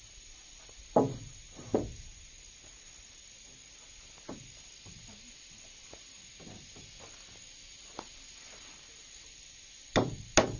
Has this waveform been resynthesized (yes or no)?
no